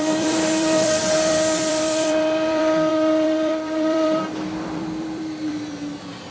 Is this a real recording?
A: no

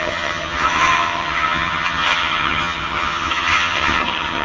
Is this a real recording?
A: no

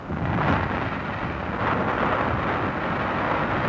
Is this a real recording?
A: yes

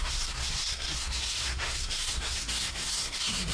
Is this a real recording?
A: no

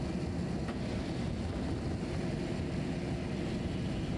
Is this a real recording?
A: yes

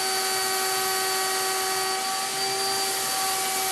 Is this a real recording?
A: yes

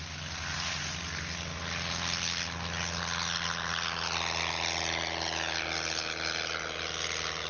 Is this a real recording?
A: yes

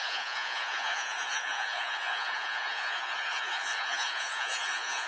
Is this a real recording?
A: no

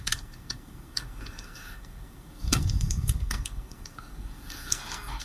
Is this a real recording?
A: no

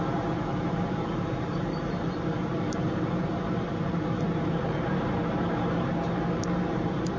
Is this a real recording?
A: no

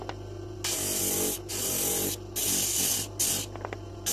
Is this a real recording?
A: yes